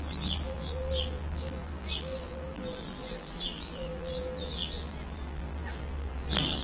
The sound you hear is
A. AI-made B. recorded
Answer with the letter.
A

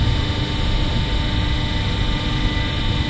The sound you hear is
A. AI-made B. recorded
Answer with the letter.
B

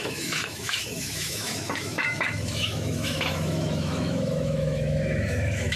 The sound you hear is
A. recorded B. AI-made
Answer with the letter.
B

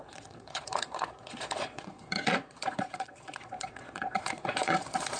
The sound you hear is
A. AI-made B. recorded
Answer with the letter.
A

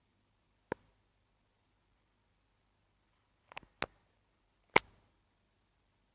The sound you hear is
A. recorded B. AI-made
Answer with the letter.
A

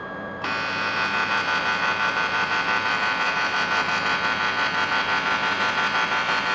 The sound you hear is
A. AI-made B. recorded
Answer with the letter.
A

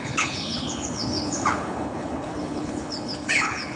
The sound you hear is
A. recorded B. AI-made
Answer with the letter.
B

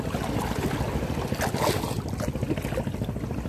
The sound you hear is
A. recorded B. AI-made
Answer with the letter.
A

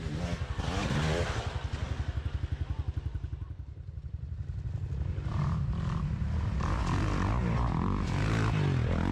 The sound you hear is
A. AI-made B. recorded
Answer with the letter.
B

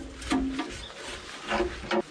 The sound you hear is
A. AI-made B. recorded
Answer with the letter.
B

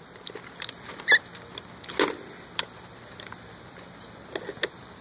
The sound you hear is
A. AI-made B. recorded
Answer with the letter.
B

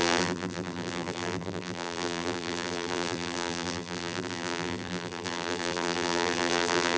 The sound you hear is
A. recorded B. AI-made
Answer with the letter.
B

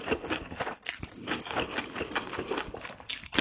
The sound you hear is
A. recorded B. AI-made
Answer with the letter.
B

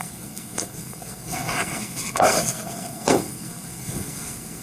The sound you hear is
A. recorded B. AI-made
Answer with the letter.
B